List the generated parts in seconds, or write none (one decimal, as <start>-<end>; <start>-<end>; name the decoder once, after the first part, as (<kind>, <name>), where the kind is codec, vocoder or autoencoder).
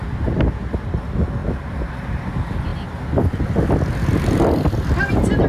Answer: 1.4-1.9 (vocoder, BigVGAN v2)